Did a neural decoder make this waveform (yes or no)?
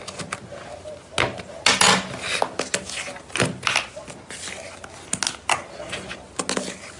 no